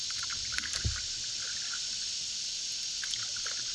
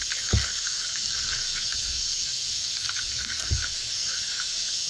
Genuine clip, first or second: first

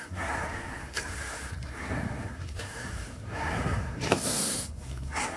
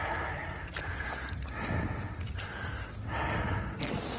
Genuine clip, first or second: second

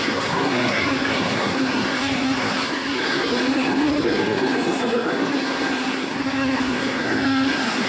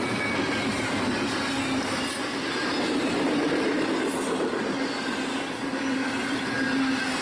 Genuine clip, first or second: second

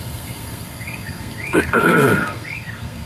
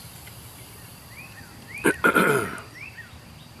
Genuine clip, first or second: second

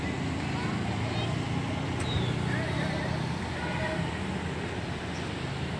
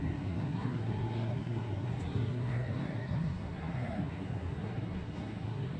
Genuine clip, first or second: first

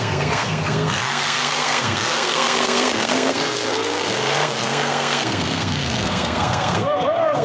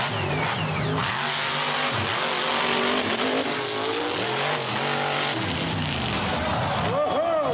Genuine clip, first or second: second